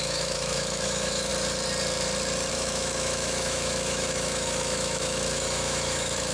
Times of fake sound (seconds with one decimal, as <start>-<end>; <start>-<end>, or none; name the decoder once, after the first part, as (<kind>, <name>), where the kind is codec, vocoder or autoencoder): 0.0-1.3 (autoencoder, DAC-VAE); 2.5-6.3